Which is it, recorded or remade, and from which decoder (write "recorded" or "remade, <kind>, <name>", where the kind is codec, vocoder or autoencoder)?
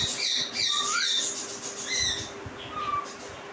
recorded